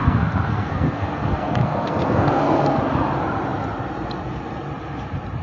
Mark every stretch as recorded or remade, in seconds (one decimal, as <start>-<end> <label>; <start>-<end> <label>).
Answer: 0.0-2.8 remade; 2.8-5.4 recorded